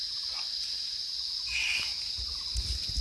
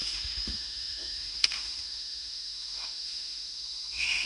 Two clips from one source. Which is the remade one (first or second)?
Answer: second